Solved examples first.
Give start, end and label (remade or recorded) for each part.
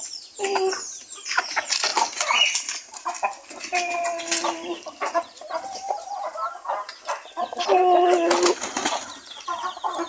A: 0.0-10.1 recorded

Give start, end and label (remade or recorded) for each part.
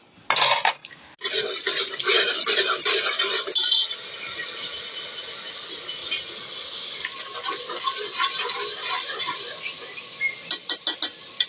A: 0.0-0.8 recorded; 0.8-2.9 remade; 2.9-11.5 recorded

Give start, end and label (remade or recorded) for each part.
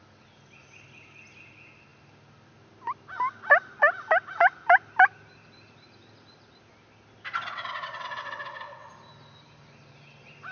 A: 0.0-7.5 recorded; 7.5-8.9 remade; 8.9-10.5 recorded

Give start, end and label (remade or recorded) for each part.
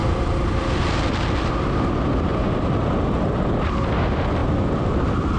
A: 0.0-0.8 remade; 0.8-2.3 recorded; 2.3-3.5 remade; 3.5-4.4 recorded; 4.4-4.9 remade; 4.9-5.4 recorded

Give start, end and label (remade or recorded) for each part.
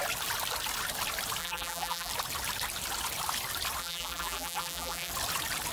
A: 0.0-1.4 recorded; 1.4-2.1 remade; 2.1-3.8 recorded; 3.8-5.1 remade; 5.1-5.7 recorded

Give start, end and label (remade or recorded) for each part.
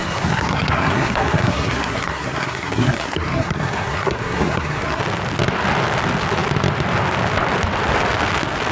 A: 0.0-5.0 remade; 5.0-8.7 recorded